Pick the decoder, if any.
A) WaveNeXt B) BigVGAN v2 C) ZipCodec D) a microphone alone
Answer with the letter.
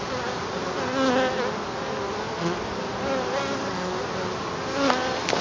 D